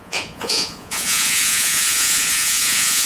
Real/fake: fake